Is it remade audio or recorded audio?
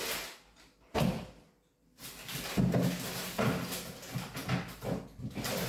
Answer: recorded